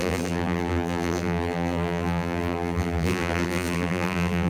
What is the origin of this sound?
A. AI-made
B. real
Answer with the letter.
A